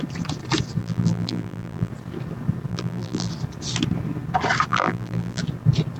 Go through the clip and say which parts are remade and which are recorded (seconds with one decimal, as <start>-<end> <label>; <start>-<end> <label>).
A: 0.0-0.8 recorded; 0.8-1.9 remade; 1.9-2.7 recorded; 2.7-3.3 remade; 3.3-4.7 recorded; 4.7-5.4 remade; 5.4-6.0 recorded